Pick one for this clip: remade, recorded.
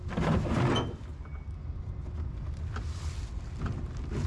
recorded